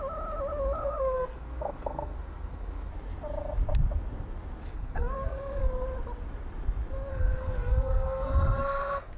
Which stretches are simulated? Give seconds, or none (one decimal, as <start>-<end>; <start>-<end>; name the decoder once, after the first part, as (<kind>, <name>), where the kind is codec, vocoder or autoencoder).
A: 0.8-2.9 (codec, SNAC); 4.7-5.6; 7.1-9.2